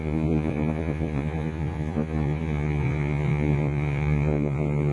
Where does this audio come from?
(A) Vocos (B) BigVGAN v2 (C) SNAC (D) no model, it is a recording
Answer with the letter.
A